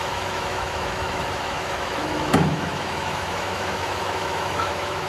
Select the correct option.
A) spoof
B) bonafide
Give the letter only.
A